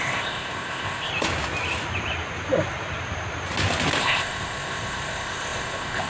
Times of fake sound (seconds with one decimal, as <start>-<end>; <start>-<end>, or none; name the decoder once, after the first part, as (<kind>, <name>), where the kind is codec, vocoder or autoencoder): 0.0-1.1 (codec, ZipCodec); 4.0-6.1